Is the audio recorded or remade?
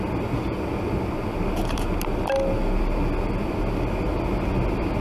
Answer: recorded